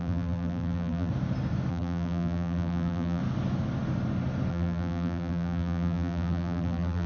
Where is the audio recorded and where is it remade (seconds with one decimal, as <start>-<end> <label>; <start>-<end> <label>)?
0.0-1.1 remade; 1.1-1.7 recorded; 1.7-3.2 remade; 3.2-4.5 recorded; 4.5-7.1 remade